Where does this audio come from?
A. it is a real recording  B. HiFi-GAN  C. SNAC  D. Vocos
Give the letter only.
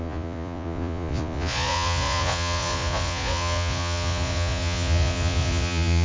D